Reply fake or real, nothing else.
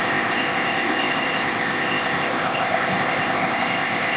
fake